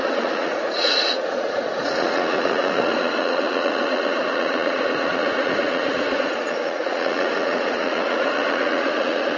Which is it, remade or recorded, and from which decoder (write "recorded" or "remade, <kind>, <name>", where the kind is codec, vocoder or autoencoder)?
remade, vocoder, Vocos